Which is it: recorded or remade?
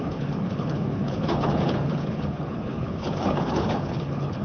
remade